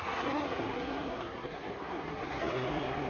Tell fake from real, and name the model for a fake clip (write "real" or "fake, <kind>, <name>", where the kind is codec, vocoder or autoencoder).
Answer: fake, codec, SNAC